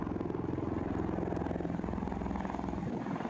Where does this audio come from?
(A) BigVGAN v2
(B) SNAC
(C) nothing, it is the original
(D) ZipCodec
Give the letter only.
C